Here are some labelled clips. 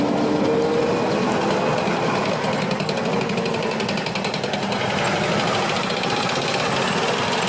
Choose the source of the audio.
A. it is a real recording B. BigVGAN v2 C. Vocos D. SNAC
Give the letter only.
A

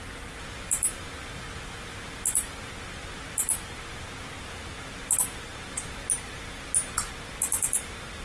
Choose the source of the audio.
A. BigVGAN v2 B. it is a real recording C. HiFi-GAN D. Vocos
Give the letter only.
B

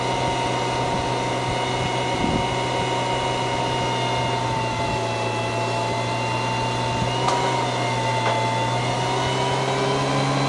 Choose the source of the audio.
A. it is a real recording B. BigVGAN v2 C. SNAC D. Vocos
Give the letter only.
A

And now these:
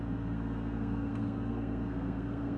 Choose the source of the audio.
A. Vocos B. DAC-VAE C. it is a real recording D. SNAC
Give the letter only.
D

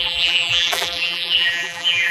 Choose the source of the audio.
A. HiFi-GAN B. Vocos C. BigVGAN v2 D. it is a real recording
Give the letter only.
C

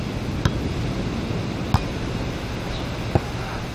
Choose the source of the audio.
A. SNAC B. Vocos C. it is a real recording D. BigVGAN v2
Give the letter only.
C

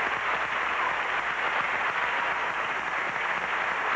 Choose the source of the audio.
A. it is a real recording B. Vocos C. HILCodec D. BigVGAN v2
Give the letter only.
A